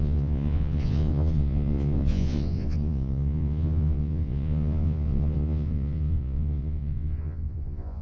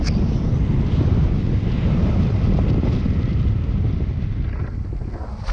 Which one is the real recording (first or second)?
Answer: second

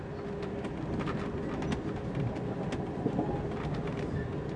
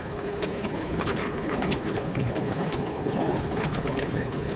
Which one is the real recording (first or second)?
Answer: first